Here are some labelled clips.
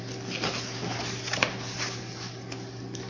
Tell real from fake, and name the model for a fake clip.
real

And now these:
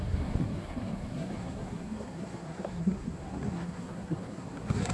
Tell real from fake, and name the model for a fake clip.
fake, codec, SNAC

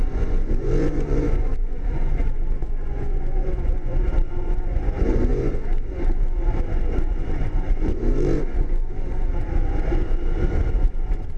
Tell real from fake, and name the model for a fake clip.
fake, vocoder, Vocos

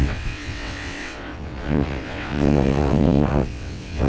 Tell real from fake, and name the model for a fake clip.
fake, vocoder, WaveNeXt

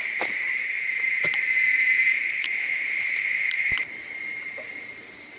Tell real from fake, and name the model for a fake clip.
fake, vocoder, BigVGAN v2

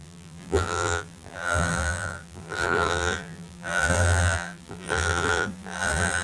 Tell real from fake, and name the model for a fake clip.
fake, vocoder, BigVGAN v2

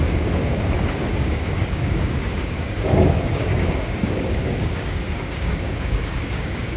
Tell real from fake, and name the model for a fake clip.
fake, codec, DAC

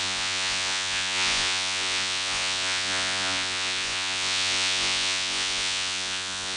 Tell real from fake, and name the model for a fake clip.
fake, vocoder, Vocos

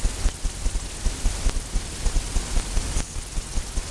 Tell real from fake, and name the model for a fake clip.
real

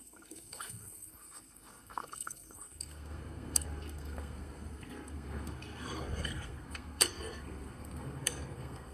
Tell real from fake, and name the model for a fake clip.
fake, codec, SNAC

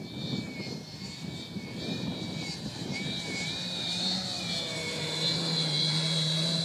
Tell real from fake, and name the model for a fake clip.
fake, vocoder, BigVGAN v2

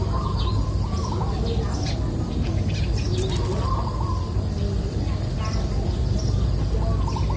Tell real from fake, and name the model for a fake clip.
real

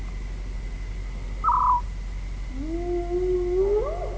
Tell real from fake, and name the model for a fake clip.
real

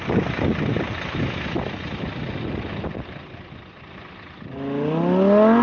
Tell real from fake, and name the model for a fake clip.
real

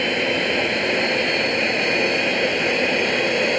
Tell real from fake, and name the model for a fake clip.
real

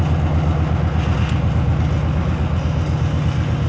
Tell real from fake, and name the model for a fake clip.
real